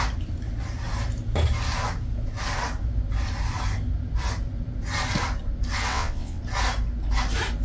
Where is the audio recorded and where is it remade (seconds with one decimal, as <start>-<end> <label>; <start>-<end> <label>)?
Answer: 0.0-5.9 recorded; 5.9-6.4 remade; 6.4-7.6 recorded